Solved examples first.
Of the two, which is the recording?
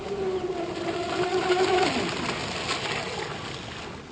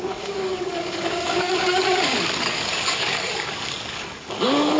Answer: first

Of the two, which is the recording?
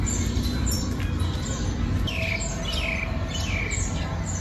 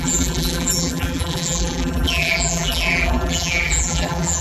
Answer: first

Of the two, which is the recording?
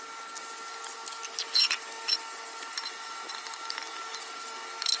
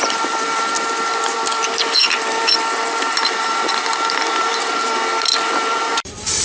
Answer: first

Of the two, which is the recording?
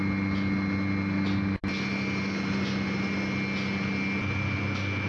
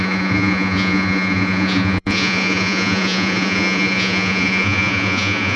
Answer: first